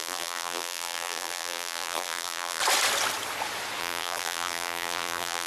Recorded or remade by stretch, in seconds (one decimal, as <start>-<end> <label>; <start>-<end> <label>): 0.0-2.6 remade; 2.6-3.8 recorded; 3.8-5.5 remade